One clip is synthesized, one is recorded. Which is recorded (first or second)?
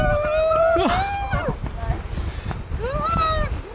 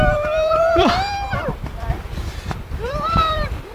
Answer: first